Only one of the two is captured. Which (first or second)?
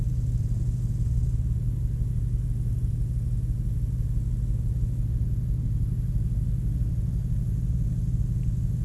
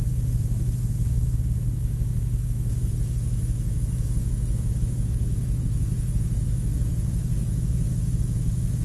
first